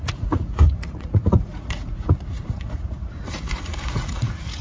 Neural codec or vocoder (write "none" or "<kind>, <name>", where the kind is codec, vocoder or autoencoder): vocoder, Vocos